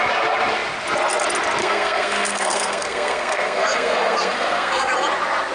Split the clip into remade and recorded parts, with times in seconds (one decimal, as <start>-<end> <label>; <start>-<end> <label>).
0.0-1.6 recorded; 1.6-4.9 remade; 4.9-5.5 recorded